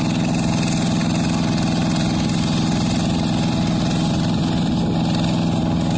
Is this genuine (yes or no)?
yes